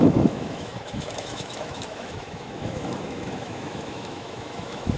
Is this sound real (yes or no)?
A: no